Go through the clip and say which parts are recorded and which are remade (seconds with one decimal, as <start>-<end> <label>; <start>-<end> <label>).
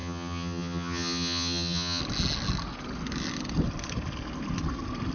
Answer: 0.0-2.0 remade; 2.0-5.1 recorded